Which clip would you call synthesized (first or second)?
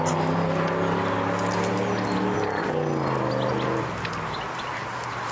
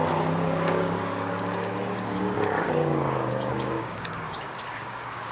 second